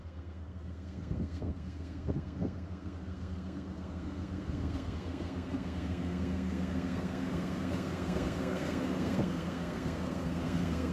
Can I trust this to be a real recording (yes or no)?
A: no